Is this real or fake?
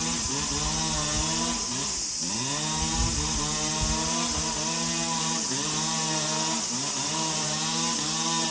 real